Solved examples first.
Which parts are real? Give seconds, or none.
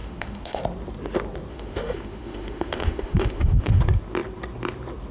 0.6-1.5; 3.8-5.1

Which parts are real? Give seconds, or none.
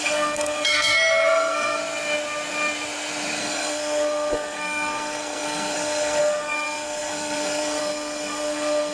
1.8-3.4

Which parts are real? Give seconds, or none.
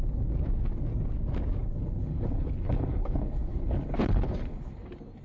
0.0-1.6; 4.7-5.2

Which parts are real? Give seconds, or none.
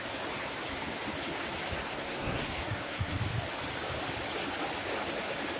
0.0-1.9; 3.2-5.6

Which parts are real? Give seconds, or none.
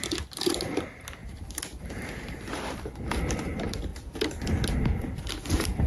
3.9-4.7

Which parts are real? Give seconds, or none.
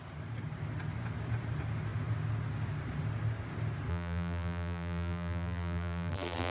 0.0-3.9